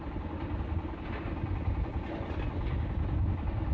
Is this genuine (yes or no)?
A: yes